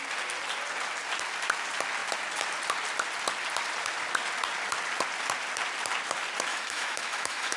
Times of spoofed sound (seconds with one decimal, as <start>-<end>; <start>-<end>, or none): 6.5-7.6